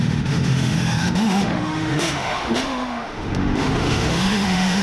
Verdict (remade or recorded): remade